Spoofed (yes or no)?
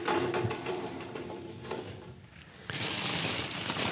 yes